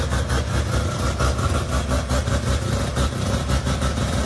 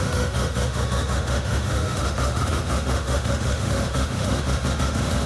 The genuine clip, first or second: first